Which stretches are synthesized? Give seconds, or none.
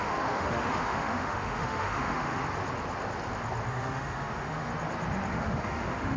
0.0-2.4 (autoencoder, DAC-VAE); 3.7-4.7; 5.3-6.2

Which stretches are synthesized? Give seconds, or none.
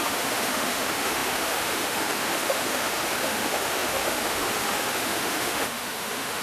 0.0-6.4 (autoencoder, DAC-VAE)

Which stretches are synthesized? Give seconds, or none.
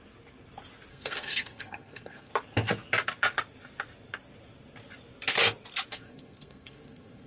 0.9-2.3 (codec, SNAC); 5.9-7.3